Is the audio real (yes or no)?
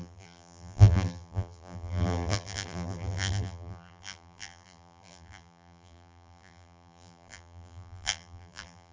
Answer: no